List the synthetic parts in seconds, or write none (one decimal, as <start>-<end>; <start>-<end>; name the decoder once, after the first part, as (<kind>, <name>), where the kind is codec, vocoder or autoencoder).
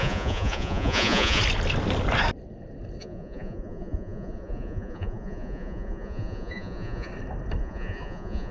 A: 0.0-1.4 (vocoder, Vocos); 3.0-7.1; 7.6-8.5